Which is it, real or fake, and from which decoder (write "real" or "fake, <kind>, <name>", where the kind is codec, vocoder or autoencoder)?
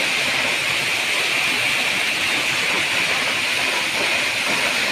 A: real